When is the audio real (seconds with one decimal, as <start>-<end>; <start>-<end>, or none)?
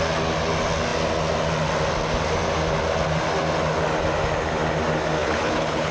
0.0-5.2